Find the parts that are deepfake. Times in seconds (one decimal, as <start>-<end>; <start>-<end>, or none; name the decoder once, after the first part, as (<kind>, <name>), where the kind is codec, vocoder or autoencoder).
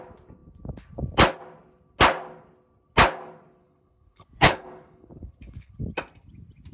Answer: 3.6-5.8 (codec, HILCodec)